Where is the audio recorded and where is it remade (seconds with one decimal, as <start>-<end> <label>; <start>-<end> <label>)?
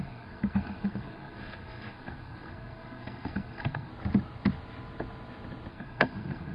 0.0-3.9 remade; 3.9-5.7 recorded; 5.7-6.5 remade